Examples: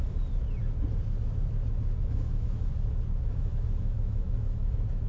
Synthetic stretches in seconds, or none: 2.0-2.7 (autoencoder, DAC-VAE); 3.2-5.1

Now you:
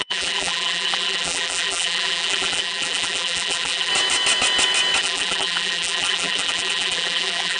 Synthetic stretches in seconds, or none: 0.0-3.9 (vocoder, BigVGAN v2); 5.0-7.6

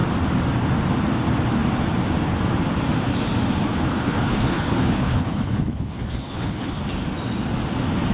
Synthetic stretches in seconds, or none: 3.9-6.8 (codec, HILCodec)